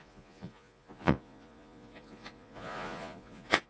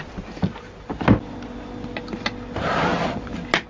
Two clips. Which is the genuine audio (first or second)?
second